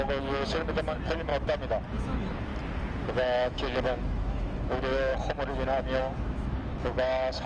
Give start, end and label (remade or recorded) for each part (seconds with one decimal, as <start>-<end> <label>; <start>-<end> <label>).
0.0-1.3 remade; 1.3-1.9 recorded; 1.9-2.5 remade; 2.5-3.1 recorded; 3.1-5.1 remade; 5.1-6.0 recorded; 6.0-7.5 remade